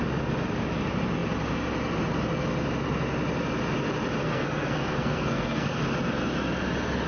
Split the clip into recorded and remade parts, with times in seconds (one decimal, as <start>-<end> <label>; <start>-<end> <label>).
0.0-4.2 recorded; 4.2-5.8 remade; 5.8-7.1 recorded